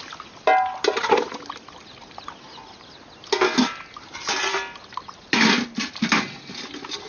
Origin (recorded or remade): recorded